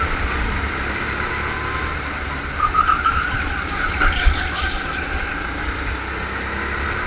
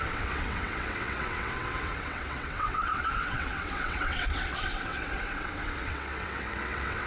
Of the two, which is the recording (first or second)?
first